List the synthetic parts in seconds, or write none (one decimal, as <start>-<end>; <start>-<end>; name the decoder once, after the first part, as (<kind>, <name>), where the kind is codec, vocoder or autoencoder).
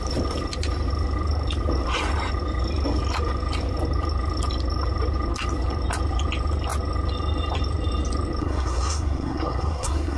8.4-10.2 (codec, SNAC)